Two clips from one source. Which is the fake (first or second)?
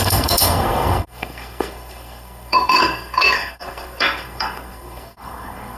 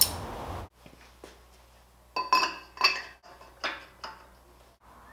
first